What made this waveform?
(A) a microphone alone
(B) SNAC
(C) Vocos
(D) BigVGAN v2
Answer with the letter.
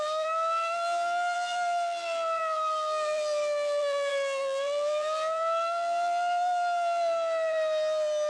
D